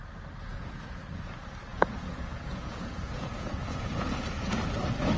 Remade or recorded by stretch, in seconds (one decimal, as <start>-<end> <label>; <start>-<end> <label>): 0.0-0.5 recorded; 0.5-1.1 remade; 1.1-1.7 recorded; 1.7-4.6 remade; 4.6-5.2 recorded

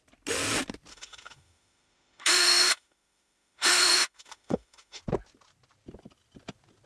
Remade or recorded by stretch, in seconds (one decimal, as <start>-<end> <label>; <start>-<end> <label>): 0.0-0.9 recorded; 0.9-5.0 remade; 5.0-6.9 recorded

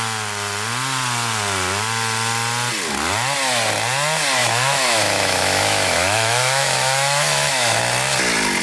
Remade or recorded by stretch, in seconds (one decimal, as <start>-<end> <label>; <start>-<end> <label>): 0.0-4.4 recorded; 4.4-7.8 remade; 7.8-8.6 recorded

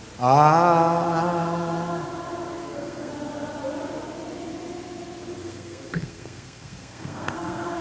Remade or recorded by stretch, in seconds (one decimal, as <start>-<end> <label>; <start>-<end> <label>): 0.0-2.6 recorded; 2.6-3.1 remade; 3.1-5.4 recorded; 5.4-7.8 remade

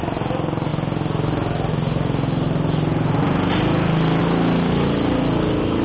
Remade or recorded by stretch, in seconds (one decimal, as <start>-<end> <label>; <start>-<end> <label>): 0.0-5.8 recorded

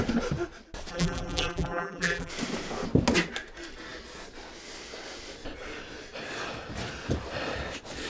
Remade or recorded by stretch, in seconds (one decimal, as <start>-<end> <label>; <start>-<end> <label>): 0.0-0.9 recorded; 0.9-2.3 remade; 2.3-8.1 recorded

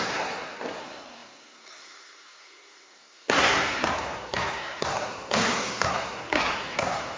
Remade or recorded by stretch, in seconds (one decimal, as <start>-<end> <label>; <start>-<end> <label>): 0.0-7.2 remade

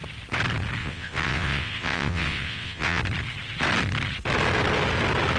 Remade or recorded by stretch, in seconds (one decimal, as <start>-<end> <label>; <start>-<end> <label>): 0.0-0.8 recorded; 0.8-3.0 remade; 3.0-5.4 recorded